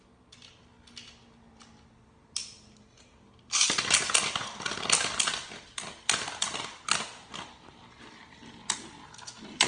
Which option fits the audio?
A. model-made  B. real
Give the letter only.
B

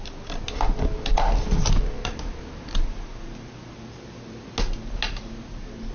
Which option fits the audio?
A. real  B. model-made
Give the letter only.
A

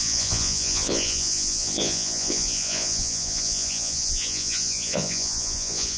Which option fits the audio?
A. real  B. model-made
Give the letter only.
B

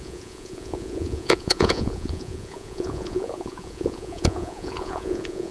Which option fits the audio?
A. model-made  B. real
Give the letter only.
A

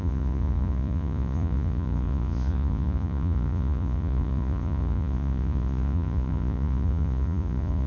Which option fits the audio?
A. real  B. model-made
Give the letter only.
B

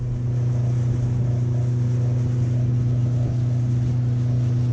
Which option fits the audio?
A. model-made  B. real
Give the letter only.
B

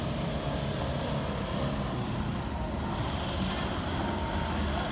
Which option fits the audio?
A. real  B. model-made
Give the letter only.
A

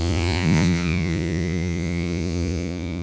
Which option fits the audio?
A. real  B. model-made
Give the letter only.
B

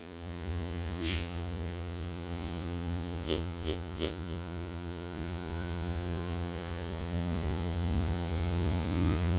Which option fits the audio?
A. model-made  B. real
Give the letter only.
A